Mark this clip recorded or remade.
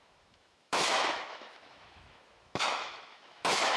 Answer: remade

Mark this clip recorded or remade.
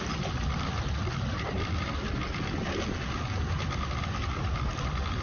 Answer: recorded